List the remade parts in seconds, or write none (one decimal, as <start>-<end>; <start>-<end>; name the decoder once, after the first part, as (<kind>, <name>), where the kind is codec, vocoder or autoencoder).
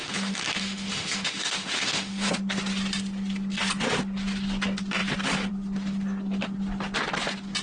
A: 0.0-2.3 (autoencoder, DAC-VAE)